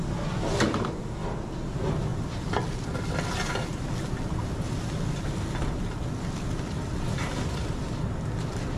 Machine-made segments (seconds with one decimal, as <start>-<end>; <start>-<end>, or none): none